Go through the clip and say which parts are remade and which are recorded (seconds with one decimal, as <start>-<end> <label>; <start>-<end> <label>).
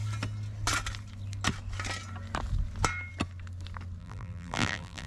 0.0-4.0 recorded; 4.0-5.1 remade